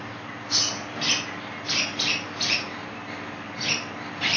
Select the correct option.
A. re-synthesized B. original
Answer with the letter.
B